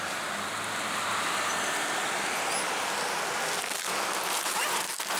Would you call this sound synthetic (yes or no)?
no